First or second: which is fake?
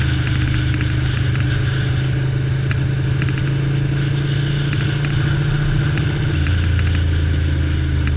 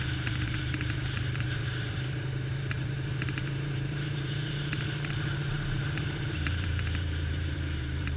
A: second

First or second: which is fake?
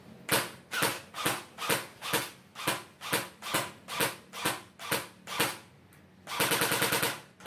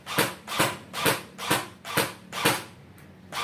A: second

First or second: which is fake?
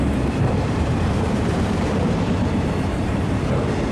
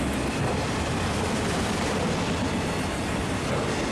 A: first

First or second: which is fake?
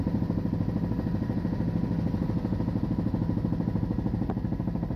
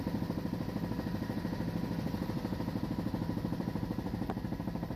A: second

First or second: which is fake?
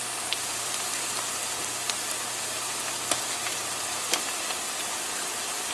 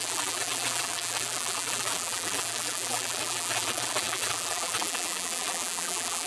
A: second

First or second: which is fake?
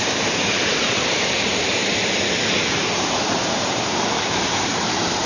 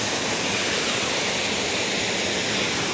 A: first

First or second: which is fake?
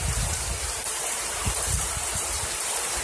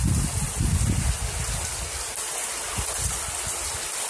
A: first